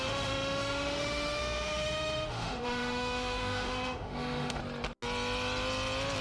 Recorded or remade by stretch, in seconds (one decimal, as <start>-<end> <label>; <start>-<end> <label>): 0.0-4.6 remade; 4.6-6.2 recorded